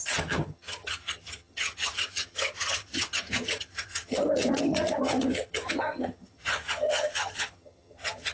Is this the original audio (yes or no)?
no